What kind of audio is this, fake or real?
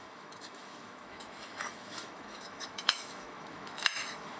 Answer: fake